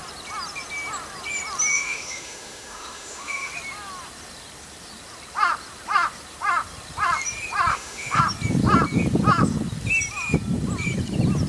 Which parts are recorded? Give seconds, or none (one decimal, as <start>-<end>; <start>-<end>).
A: 0.0-1.7; 3.5-7.7; 8.2-11.5